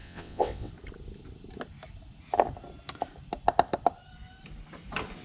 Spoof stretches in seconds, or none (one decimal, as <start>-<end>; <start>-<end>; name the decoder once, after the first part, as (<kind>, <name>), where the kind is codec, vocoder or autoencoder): 0.0-0.7 (vocoder, WaveNeXt)